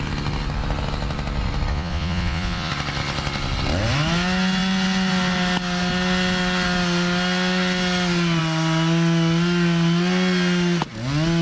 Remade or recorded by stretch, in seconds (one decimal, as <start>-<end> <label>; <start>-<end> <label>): 0.0-1.7 recorded; 1.7-2.7 remade; 2.7-11.4 recorded